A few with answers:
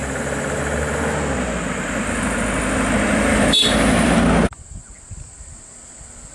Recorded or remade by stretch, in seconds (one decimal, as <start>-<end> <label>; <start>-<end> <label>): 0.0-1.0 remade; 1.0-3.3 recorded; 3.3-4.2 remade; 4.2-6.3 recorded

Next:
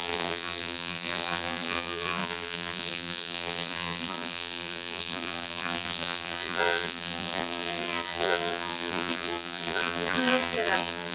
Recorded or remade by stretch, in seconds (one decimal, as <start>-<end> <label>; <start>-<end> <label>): 0.0-11.1 remade

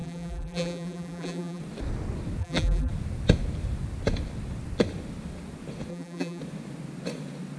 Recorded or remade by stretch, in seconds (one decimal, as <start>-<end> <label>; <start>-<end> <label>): 0.0-1.6 remade; 1.6-2.4 recorded; 2.4-2.9 remade; 2.9-5.9 recorded; 5.9-6.4 remade; 6.4-7.6 recorded

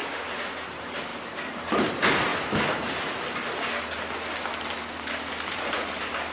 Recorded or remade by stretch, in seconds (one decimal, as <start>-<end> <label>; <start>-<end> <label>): 0.0-0.6 recorded; 0.6-2.3 remade; 2.3-5.5 recorded; 5.5-6.3 remade